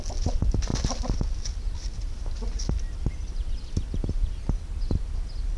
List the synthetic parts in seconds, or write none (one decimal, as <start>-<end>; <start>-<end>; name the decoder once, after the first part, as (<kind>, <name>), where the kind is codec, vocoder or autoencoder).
none